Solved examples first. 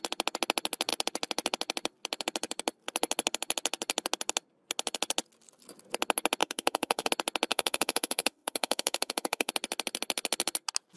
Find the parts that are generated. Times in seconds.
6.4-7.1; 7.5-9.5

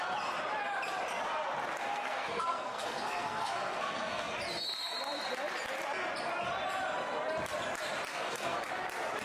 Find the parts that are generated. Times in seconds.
1.8-4.3; 8.1-8.7